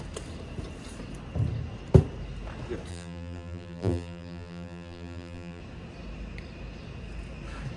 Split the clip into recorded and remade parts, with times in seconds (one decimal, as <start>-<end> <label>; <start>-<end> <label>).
0.0-2.9 recorded; 2.9-5.6 remade; 5.6-7.8 recorded